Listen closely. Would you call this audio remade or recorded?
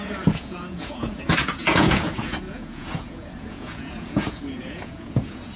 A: remade